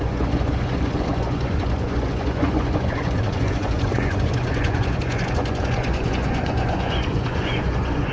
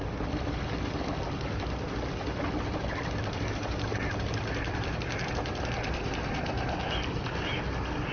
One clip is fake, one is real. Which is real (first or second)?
second